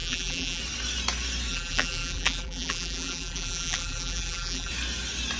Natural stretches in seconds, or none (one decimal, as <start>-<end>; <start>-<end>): 0.6-1.5; 4.7-5.4